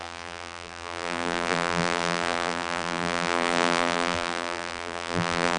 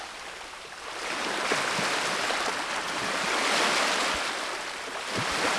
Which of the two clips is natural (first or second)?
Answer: second